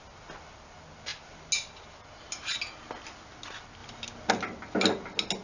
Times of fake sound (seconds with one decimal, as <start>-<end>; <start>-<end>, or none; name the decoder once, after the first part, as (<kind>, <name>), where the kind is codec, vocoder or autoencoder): none